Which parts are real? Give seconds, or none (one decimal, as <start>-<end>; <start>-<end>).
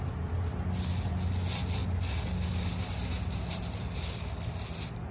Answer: 0.0-5.1